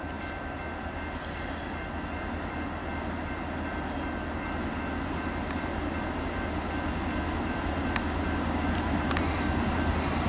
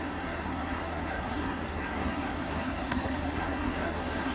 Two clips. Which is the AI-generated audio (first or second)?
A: second